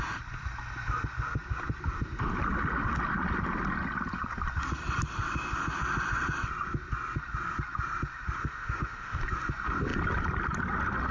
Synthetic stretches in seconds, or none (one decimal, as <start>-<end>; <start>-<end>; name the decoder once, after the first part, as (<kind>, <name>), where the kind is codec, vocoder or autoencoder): 8.4-9.2 (autoencoder, DAC-VAE)